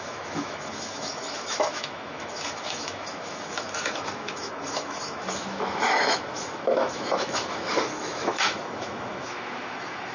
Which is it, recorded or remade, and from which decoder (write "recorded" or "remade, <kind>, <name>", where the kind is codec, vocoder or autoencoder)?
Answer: remade, autoencoder, DAC-VAE